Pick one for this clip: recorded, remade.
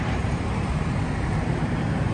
remade